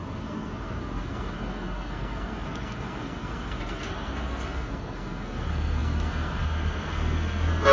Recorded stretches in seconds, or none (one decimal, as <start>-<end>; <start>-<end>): none